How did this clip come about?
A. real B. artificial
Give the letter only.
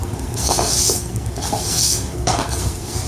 B